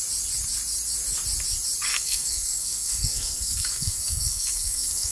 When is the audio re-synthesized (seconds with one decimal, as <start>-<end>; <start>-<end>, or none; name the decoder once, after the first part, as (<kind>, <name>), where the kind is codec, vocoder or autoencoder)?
1.9-5.1 (codec, SNAC)